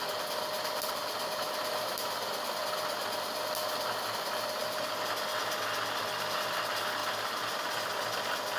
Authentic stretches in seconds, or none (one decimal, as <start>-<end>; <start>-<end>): 0.0-8.6